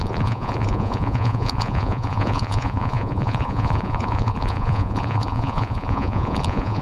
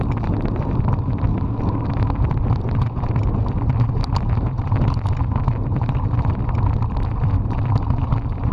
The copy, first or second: first